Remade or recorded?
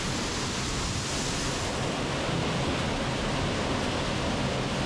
recorded